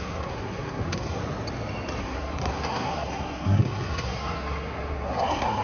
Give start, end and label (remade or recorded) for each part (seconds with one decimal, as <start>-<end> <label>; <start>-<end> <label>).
0.0-1.2 remade; 1.2-2.0 recorded; 2.0-5.6 remade